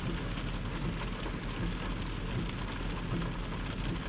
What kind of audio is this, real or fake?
real